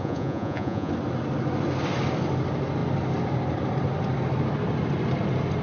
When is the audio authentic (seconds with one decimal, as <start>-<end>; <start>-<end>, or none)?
0.9-5.6